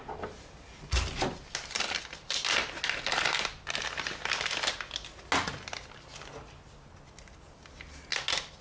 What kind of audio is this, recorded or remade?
recorded